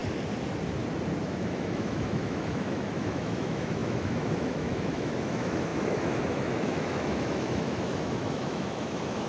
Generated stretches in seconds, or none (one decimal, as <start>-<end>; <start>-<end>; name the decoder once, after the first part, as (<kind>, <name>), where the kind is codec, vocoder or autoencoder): 1.2-9.3 (autoencoder, DAC-VAE)